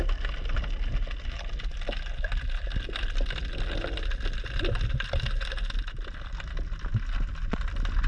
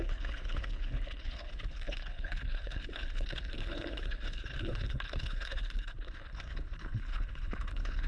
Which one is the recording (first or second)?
first